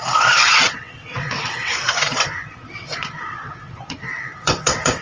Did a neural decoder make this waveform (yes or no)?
yes